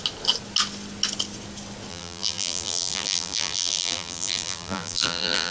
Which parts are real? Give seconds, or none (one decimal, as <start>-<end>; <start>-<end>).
0.0-1.9